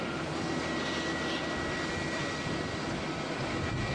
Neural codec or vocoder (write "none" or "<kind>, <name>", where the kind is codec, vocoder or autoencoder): none